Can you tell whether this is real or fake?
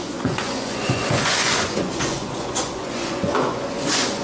fake